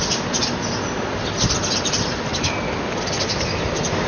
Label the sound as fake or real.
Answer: real